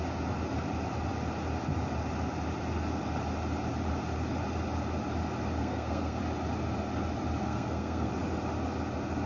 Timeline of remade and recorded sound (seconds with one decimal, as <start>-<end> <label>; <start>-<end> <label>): 0.0-5.6 recorded; 5.6-6.2 remade; 6.2-7.4 recorded; 7.4-8.1 remade; 8.1-9.3 recorded